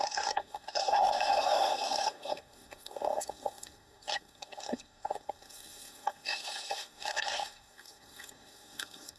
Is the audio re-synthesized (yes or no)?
yes